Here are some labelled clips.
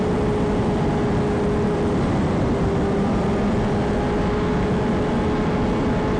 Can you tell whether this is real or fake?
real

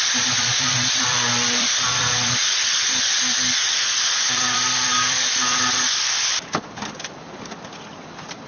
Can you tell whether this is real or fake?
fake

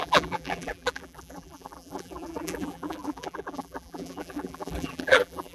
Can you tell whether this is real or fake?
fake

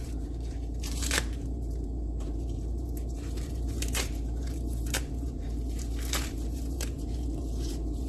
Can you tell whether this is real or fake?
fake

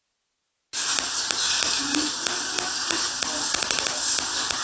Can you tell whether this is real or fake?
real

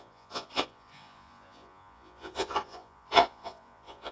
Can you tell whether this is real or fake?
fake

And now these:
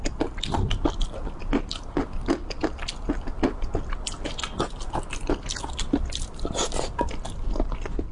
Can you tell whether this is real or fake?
real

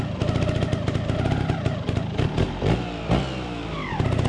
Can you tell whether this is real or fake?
real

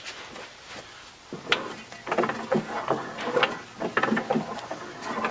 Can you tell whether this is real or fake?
real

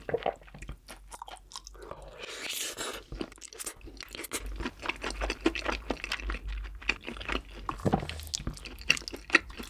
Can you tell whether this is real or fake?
real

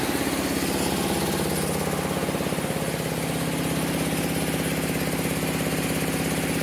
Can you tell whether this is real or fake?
real